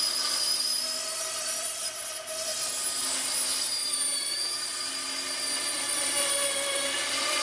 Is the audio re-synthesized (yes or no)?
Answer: no